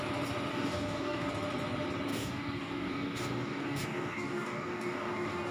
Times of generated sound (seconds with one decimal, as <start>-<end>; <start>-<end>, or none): 0.5-1.3; 2.1-5.5